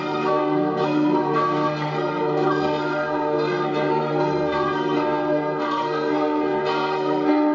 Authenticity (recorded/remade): remade